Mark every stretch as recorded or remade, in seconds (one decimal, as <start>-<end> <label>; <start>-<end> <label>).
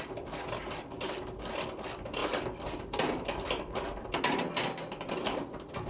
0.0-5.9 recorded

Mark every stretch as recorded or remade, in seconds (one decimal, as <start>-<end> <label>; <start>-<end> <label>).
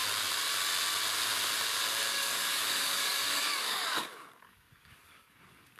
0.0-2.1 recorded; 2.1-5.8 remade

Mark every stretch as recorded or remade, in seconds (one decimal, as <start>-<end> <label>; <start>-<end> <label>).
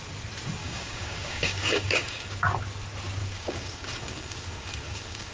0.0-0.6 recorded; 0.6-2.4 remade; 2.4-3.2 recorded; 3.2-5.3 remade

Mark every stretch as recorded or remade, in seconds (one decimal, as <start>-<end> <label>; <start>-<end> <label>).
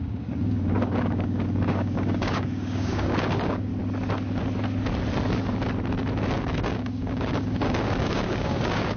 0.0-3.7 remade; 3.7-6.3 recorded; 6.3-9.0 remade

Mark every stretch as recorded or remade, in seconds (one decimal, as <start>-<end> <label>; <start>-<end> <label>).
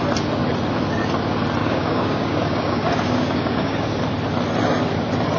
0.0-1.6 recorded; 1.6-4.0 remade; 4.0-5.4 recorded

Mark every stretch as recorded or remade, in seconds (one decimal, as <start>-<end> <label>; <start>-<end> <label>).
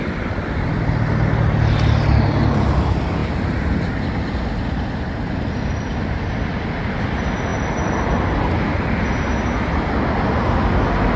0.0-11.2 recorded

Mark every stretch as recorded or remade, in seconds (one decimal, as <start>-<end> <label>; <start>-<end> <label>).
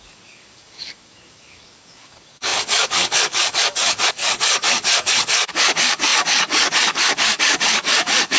0.0-8.4 remade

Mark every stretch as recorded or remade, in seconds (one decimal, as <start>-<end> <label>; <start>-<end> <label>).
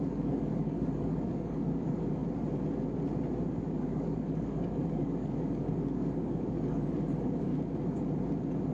0.0-2.2 remade; 2.2-3.6 recorded; 3.6-7.5 remade; 7.5-8.7 recorded